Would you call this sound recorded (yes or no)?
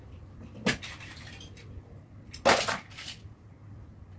yes